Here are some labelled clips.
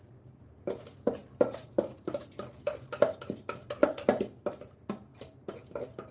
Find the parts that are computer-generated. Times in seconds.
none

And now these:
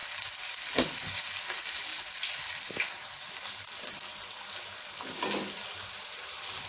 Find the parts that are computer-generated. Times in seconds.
none

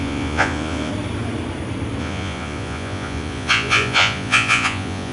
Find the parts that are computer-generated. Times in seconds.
0.0-0.9 (vocoder, Vocos); 2.0-5.1